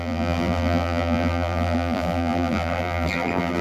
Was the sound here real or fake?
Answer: fake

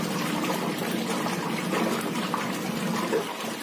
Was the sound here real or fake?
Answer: real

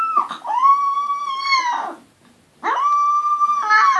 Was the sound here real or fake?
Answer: real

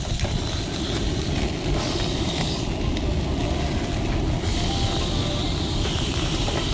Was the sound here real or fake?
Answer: real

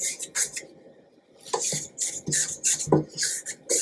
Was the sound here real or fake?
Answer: real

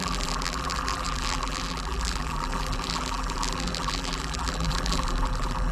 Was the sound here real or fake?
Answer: fake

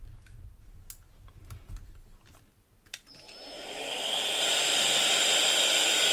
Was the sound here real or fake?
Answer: real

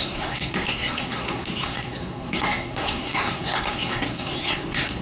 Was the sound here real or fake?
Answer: fake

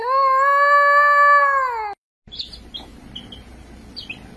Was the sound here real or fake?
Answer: real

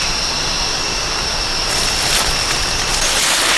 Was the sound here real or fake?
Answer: real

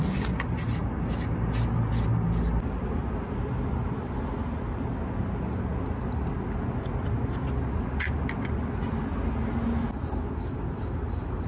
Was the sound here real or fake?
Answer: real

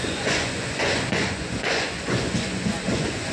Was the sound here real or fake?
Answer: fake